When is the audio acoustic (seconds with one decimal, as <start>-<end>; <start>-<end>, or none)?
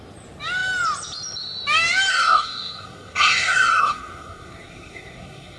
0.0-2.1